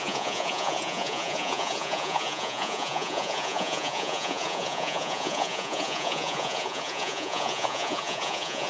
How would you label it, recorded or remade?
remade